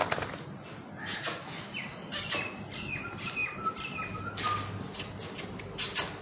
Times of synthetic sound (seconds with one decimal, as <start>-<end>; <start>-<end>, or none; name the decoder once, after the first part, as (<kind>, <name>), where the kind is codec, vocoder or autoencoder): none